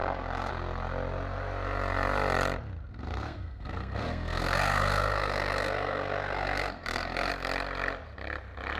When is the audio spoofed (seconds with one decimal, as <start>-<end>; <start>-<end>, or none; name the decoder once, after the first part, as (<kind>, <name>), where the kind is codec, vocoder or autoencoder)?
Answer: 0.0-0.5 (codec, SNAC); 2.9-7.3